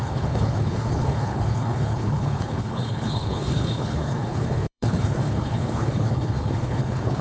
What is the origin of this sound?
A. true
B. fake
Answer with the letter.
B